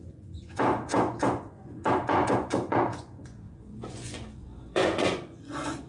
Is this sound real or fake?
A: fake